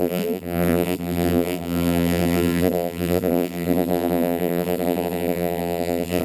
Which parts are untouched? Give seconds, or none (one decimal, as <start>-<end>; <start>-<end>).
none